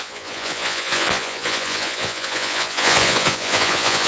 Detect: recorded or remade remade